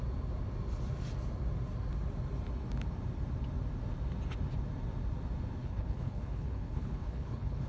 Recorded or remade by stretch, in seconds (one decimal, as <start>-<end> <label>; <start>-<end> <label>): 0.0-5.6 recorded; 5.6-7.7 remade